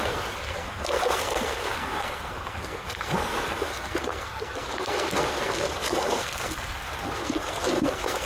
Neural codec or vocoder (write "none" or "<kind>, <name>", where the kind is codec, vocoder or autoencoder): codec, SNAC